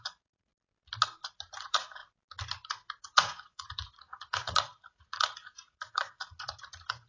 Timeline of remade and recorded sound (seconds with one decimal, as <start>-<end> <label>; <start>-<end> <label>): 0.0-0.5 remade; 0.5-1.6 recorded; 1.6-2.0 remade; 2.0-3.0 recorded; 3.0-7.1 remade